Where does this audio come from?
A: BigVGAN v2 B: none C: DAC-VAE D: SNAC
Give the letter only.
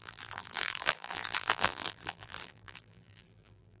A